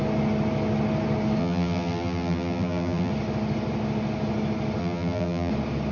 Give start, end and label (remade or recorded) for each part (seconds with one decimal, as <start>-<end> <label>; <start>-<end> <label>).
0.0-1.4 recorded; 1.4-3.1 remade; 3.1-4.8 recorded; 4.8-5.5 remade; 5.5-5.9 recorded